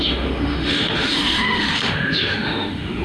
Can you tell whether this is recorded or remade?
remade